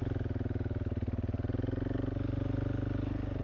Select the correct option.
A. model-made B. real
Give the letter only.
B